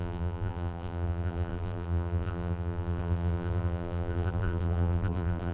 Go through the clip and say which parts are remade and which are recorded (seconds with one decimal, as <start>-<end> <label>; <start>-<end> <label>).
0.0-5.5 remade